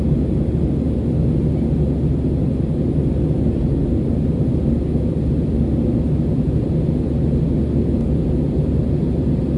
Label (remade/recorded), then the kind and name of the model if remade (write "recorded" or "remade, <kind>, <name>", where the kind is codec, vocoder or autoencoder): recorded